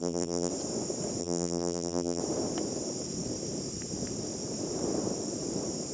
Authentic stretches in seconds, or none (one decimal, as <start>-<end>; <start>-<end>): 0.5-1.2; 2.2-5.9